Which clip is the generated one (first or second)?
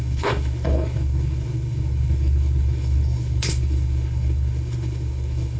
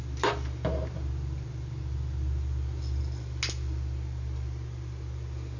first